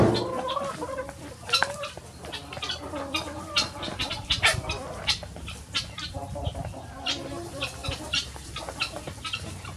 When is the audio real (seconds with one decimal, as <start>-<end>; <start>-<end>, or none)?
6.2-7.3